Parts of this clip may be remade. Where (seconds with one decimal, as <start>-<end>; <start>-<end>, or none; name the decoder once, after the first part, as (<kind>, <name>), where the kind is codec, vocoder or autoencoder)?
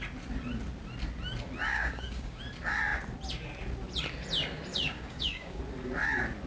1.7-2.4 (codec, DAC); 4.7-5.6